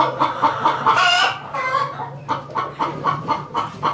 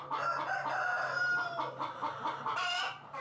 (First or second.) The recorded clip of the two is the second